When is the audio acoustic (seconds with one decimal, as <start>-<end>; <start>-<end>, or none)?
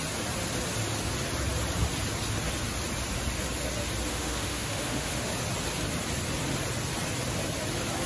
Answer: 0.0-4.1; 5.3-8.1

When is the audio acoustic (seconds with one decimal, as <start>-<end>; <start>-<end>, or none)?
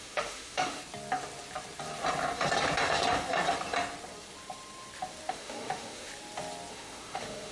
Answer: 0.8-5.3; 6.1-6.7